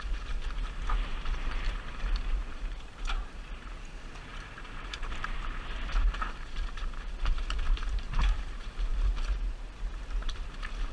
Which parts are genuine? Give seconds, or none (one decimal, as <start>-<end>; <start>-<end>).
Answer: none